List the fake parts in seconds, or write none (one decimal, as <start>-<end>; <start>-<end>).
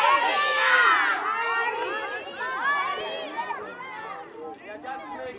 none